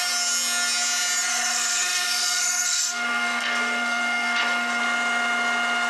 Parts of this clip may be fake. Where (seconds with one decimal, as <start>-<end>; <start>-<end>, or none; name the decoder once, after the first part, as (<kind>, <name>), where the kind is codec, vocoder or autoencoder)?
1.3-4.8 (codec, SNAC)